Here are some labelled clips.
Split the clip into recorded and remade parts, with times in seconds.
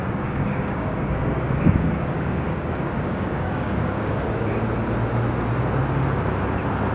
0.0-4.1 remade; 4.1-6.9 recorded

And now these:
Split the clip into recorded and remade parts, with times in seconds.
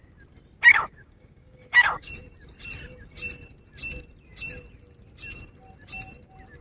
0.0-0.7 recorded; 0.7-2.1 remade; 2.1-6.6 recorded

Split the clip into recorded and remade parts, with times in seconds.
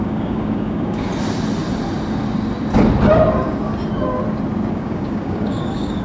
0.0-1.1 remade; 1.1-4.7 recorded; 4.7-6.0 remade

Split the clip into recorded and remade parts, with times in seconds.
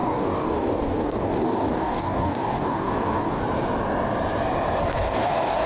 0.0-3.4 remade; 3.4-4.8 recorded; 4.8-5.7 remade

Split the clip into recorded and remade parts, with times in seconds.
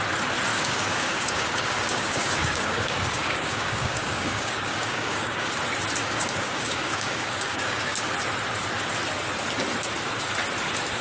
0.0-0.5 recorded; 0.5-5.5 remade; 5.5-6.0 recorded; 6.0-8.1 remade; 8.1-11.0 recorded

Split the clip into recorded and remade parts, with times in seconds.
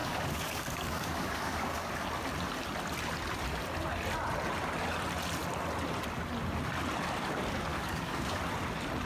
0.0-1.9 remade; 1.9-7.7 recorded; 7.7-8.4 remade; 8.4-9.1 recorded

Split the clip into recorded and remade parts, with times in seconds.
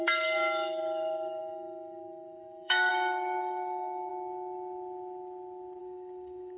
0.0-4.1 remade; 4.1-5.8 recorded; 5.8-6.6 remade